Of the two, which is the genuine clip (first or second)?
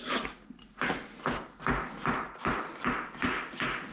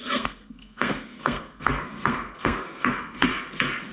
first